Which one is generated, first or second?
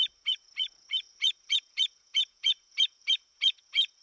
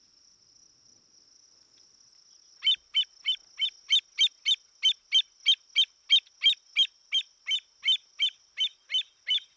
first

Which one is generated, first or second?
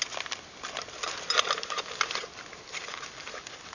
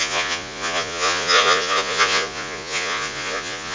second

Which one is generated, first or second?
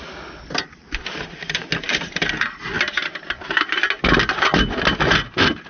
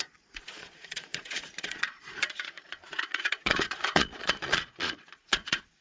second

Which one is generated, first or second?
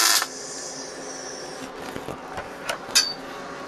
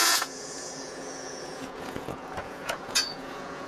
second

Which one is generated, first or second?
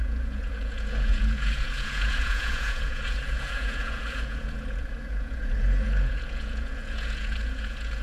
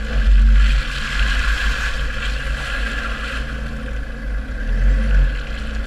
first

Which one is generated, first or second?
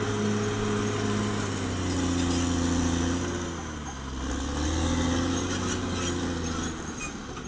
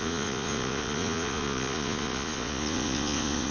second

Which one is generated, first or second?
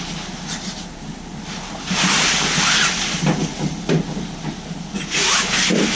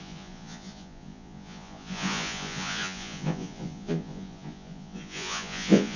second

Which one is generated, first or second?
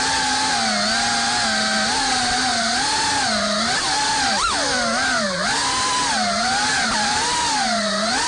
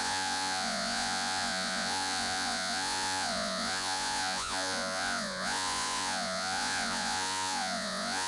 second